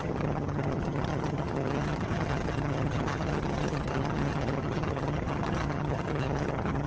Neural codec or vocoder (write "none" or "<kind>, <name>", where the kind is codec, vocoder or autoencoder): vocoder, HiFi-GAN